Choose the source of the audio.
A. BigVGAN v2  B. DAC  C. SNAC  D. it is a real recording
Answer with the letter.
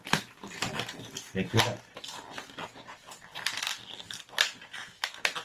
D